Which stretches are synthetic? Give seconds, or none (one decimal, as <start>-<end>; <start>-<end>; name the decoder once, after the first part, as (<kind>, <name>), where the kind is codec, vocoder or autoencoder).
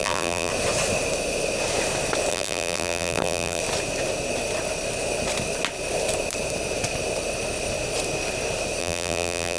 0.0-0.5 (vocoder, BigVGAN v2); 2.3-3.6; 8.8-9.6